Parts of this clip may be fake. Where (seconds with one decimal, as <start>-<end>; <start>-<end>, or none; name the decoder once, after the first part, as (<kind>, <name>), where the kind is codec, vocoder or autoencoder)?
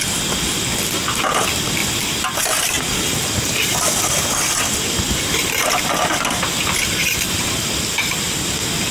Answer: none